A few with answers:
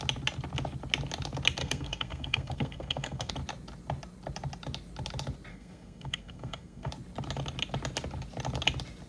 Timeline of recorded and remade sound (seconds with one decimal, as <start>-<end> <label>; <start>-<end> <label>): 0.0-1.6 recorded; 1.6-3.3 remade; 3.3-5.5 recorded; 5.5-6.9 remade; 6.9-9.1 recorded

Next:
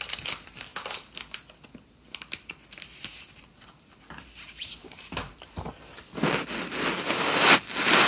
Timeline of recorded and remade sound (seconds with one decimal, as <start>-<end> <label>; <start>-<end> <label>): 0.0-8.1 recorded

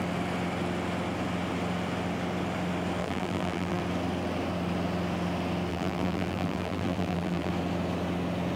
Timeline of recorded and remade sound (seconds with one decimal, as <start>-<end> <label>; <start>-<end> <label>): 0.0-3.0 recorded; 3.0-3.8 remade; 3.8-5.7 recorded; 5.7-7.5 remade; 7.5-8.6 recorded

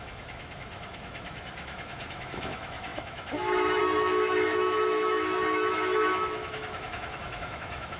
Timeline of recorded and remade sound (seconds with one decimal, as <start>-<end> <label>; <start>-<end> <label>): 0.0-8.0 remade

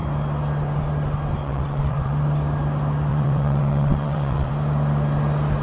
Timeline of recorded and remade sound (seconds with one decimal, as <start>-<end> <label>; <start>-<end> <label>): 0.0-1.4 recorded; 1.4-2.1 remade; 2.1-3.1 recorded; 3.1-4.5 remade; 4.5-5.6 recorded